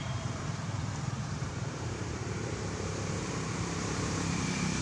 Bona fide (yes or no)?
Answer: no